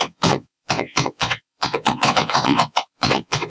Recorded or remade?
remade